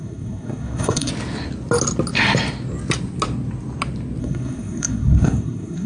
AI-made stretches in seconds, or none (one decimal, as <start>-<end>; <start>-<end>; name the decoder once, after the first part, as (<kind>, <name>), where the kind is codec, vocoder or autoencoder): 0.0-1.1 (codec, SNAC); 4.2-5.9